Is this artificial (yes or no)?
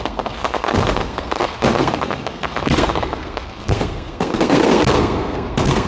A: yes